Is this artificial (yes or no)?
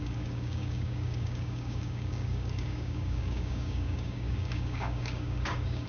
yes